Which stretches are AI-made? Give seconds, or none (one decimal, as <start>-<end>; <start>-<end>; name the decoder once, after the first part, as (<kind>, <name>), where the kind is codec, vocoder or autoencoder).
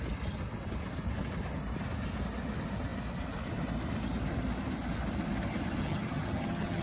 5.8-6.8 (vocoder, HiFi-GAN)